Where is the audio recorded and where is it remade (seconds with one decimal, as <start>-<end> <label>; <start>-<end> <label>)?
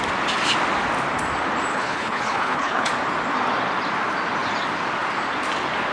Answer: 0.0-1.7 recorded; 1.7-2.9 remade; 2.9-5.9 recorded